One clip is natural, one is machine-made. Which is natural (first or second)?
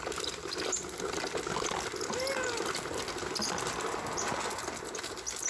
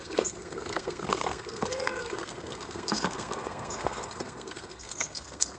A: first